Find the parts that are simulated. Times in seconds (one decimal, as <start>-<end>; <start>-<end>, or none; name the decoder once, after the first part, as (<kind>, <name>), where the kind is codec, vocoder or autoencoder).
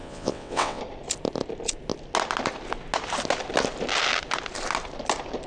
0.0-0.8 (vocoder, WaveNeXt)